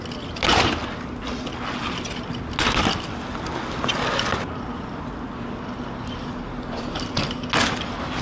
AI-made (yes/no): no